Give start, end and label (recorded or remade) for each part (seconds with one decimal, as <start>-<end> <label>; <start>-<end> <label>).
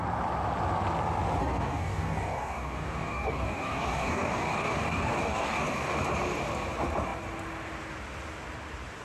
0.0-1.4 recorded; 1.4-6.0 remade; 6.0-9.0 recorded